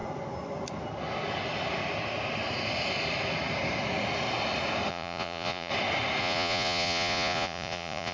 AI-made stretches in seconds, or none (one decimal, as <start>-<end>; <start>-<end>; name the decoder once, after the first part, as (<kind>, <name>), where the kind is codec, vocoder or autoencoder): 4.9-5.7 (vocoder, Vocos); 6.2-8.1